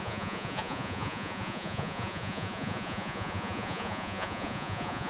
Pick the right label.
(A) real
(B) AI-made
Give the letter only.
B